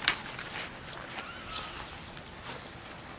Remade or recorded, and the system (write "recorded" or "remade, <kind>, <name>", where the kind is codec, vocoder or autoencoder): remade, vocoder, BigVGAN v2